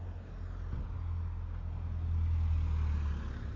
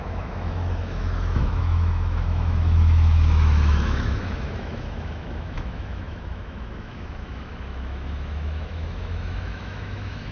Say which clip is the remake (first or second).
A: second